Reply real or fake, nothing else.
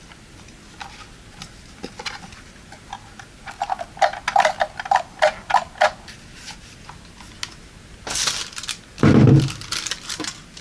real